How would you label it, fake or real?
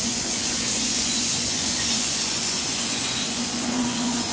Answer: fake